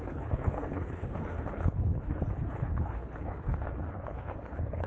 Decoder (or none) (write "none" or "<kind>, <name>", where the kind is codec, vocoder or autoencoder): codec, HILCodec